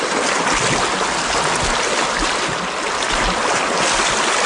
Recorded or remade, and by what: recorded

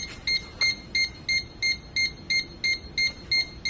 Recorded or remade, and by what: recorded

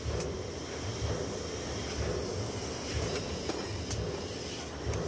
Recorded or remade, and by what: recorded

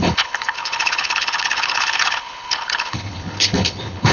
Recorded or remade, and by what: remade, codec, HILCodec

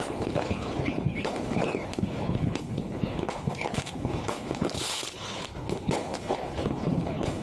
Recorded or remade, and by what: remade, codec, HILCodec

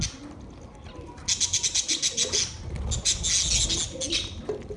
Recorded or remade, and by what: recorded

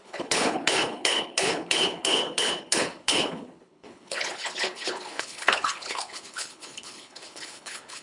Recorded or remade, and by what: remade, codec, HILCodec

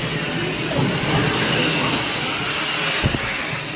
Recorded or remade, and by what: recorded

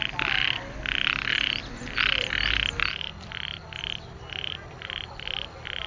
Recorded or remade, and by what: recorded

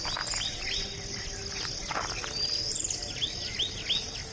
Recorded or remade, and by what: recorded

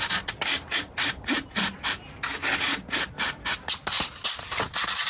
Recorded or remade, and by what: recorded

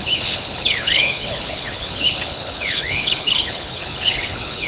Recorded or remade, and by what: remade, codec, HILCodec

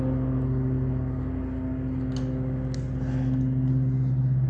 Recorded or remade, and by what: recorded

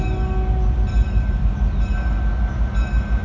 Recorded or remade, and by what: recorded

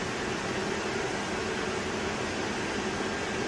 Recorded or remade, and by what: recorded